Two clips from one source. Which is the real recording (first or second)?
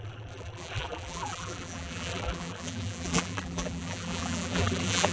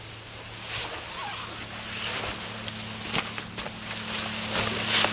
second